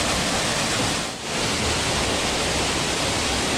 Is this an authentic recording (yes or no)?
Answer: yes